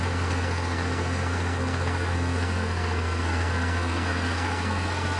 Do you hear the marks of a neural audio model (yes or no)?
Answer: yes